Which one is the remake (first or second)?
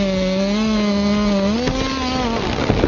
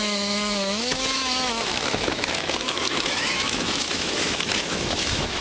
second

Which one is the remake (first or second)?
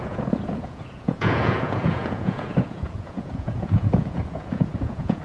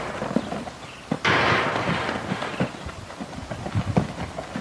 first